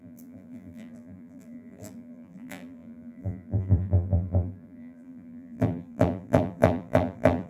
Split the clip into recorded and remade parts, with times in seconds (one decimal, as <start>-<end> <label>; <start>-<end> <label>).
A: 0.0-7.5 remade